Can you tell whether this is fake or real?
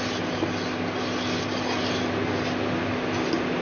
real